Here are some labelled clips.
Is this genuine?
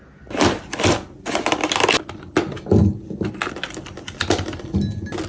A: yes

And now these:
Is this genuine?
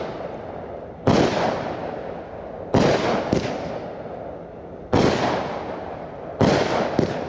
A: yes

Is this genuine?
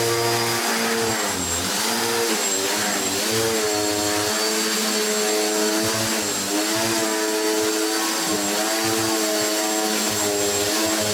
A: yes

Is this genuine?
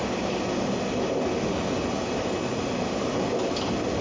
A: yes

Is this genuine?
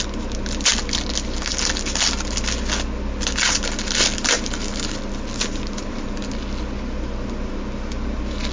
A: yes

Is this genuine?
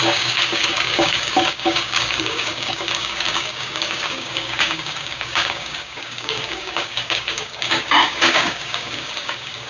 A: no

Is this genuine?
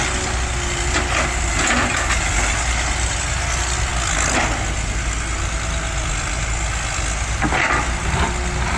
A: yes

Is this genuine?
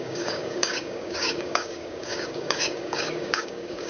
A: no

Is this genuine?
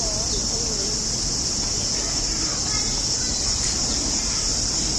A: yes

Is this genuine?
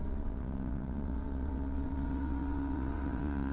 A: no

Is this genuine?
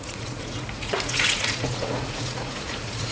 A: no